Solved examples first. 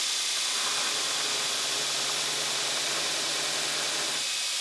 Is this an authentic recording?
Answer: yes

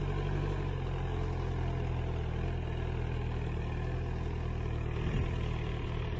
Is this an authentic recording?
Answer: yes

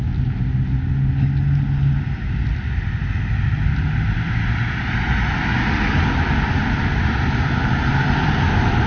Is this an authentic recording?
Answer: yes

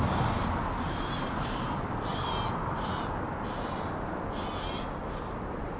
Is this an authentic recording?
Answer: yes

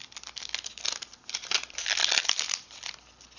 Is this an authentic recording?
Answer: yes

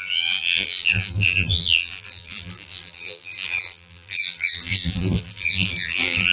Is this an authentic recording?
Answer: no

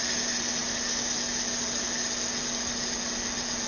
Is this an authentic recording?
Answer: yes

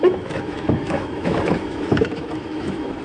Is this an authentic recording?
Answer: no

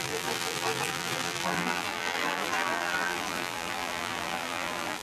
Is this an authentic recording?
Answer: no